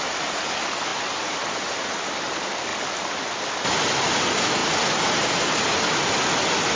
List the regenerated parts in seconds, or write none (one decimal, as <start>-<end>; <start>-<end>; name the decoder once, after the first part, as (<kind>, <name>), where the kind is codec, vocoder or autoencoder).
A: none